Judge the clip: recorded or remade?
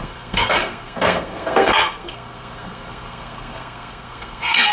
remade